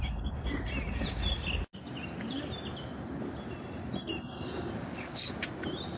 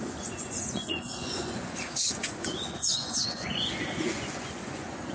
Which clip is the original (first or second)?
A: first